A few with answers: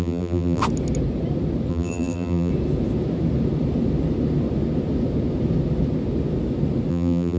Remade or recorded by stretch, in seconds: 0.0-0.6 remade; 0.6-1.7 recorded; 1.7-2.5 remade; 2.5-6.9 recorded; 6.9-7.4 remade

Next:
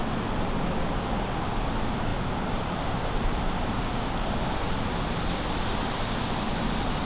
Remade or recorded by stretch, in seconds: 0.0-7.0 recorded

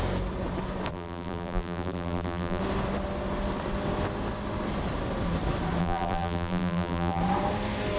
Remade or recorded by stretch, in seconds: 0.0-0.9 recorded; 0.9-2.6 remade; 2.6-5.8 recorded; 5.8-7.2 remade; 7.2-8.0 recorded

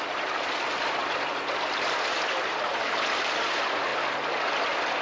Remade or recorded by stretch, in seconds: 0.0-2.7 remade; 2.7-3.2 recorded; 3.2-3.9 remade; 3.9-5.0 recorded

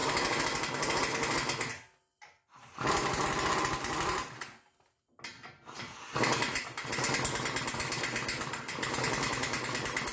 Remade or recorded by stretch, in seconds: 0.0-10.1 recorded

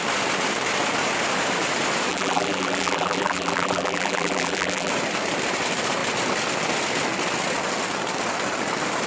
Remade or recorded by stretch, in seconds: 0.0-2.1 recorded; 2.1-4.9 remade; 4.9-9.1 recorded

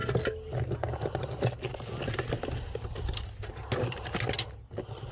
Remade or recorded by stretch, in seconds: 0.0-5.1 recorded

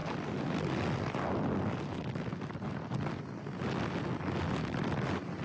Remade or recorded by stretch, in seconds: 0.0-3.2 remade; 3.2-5.4 recorded